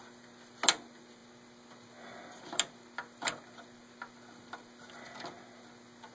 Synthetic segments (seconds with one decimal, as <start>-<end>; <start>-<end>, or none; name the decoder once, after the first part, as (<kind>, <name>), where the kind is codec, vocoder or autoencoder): none